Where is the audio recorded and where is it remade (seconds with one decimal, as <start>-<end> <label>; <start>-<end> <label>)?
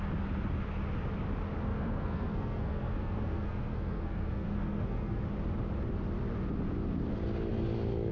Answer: 0.0-1.7 recorded; 1.7-5.2 remade; 5.2-8.1 recorded